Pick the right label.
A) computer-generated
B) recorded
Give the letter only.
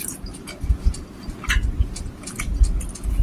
B